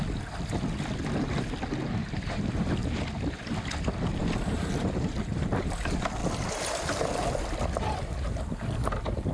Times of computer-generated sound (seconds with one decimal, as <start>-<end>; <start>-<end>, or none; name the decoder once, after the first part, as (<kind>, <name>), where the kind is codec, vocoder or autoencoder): 2.0-2.7 (vocoder, BigVGAN v2); 4.2-5.8